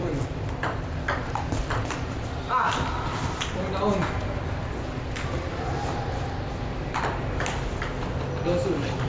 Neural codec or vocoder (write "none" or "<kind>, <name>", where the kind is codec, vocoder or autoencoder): none